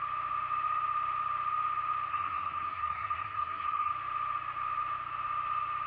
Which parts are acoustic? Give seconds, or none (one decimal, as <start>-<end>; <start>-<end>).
0.0-2.1; 3.9-5.9